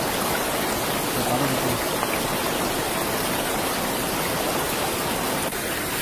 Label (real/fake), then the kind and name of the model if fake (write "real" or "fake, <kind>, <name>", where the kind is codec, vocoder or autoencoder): real